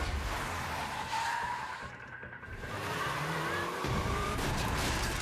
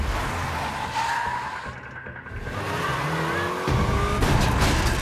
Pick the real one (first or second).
second